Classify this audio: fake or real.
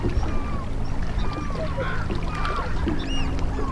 real